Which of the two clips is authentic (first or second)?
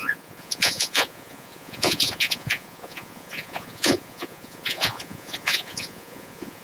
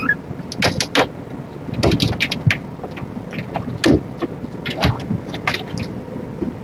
second